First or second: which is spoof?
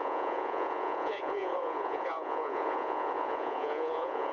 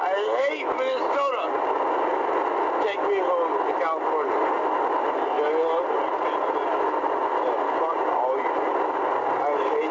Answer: first